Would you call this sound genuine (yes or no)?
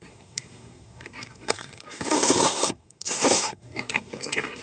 no